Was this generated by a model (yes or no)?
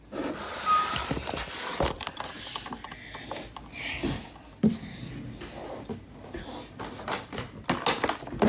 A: no